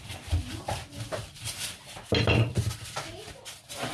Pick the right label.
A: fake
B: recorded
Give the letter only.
B